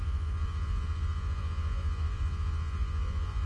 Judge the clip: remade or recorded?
remade